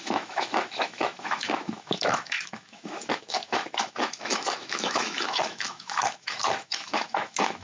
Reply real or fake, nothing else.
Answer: fake